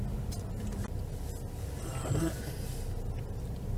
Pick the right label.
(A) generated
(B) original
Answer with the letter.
B